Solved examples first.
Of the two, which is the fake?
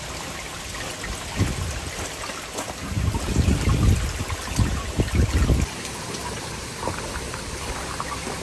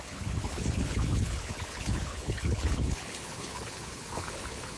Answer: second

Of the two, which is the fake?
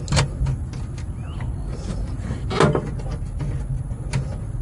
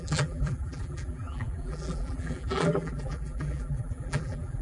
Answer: second